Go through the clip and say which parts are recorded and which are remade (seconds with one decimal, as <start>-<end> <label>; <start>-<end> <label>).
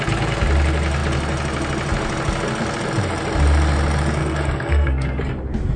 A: 0.0-4.2 recorded; 4.2-5.2 remade; 5.2-5.8 recorded